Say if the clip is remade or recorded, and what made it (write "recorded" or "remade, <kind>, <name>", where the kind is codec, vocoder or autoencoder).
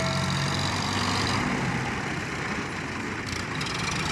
recorded